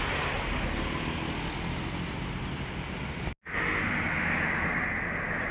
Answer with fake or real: real